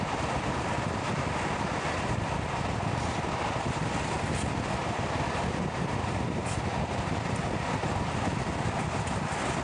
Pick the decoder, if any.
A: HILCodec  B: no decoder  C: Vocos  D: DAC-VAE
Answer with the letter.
B